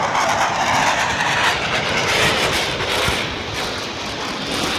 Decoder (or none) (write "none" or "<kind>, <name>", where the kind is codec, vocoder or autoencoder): vocoder, BigVGAN v2